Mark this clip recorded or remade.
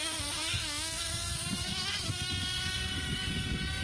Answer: remade